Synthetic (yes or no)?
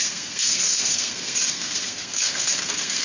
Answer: yes